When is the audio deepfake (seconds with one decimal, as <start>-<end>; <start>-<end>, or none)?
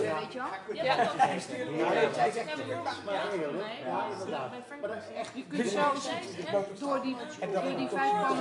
none